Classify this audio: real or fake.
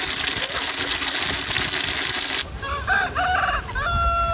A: real